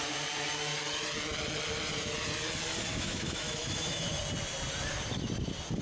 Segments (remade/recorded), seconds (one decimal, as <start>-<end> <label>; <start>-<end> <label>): 0.0-2.9 recorded; 2.9-4.2 remade; 4.2-5.8 recorded